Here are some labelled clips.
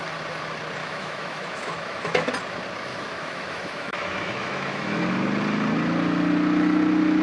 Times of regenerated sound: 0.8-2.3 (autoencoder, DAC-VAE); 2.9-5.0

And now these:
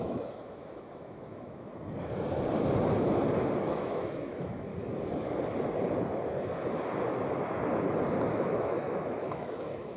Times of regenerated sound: 0.0-1.7 (autoencoder, DAC-VAE); 3.6-4.7; 8.3-10.0

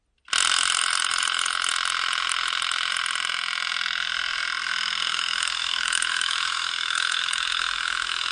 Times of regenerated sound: 5.1-8.3 (autoencoder, DAC-VAE)

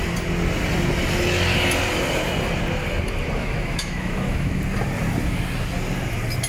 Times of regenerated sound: 3.4-4.6 (autoencoder, DAC-VAE)